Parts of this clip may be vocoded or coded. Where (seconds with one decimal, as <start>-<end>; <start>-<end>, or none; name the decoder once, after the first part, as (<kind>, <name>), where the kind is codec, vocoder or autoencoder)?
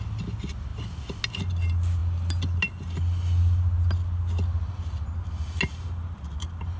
none